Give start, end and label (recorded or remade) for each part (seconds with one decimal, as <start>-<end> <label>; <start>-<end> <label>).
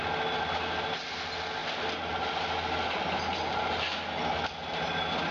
0.0-5.3 recorded